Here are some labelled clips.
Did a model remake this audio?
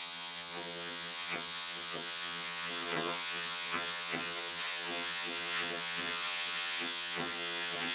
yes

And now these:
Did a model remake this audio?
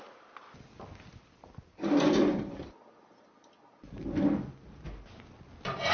no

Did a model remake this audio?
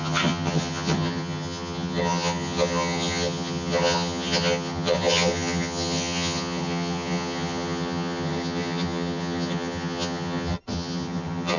yes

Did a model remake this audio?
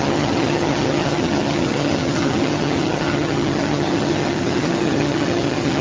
yes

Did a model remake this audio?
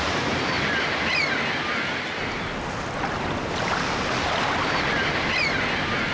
no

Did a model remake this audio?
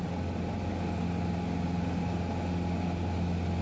no